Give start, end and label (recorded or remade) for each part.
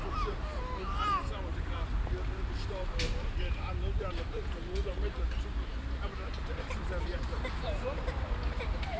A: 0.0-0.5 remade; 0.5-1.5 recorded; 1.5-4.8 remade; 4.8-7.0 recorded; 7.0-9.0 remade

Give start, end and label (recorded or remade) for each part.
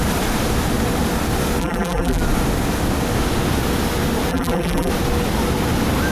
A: 0.0-1.6 recorded; 1.6-2.2 remade; 2.2-4.3 recorded; 4.3-4.9 remade; 4.9-6.1 recorded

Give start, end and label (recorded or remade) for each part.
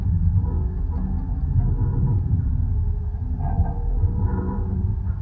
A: 0.0-1.9 recorded; 1.9-2.5 remade; 2.5-3.1 recorded; 3.1-5.2 remade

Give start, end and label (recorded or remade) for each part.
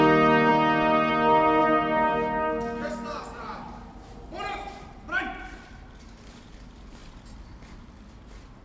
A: 0.0-1.6 recorded; 1.6-5.2 remade; 5.2-8.6 recorded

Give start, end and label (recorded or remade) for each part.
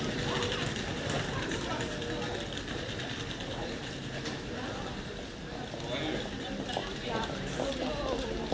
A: 0.0-6.8 recorded; 6.8-7.3 remade; 7.3-8.5 recorded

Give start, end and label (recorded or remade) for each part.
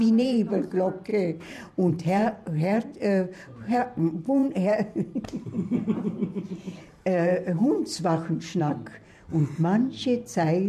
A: 0.0-1.1 remade; 1.1-1.9 recorded; 1.9-7.8 remade; 7.8-8.6 recorded; 8.6-9.9 remade; 9.9-10.7 recorded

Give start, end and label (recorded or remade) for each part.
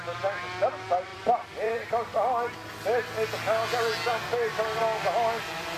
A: 0.0-1.1 recorded; 1.1-1.7 remade; 1.7-5.8 recorded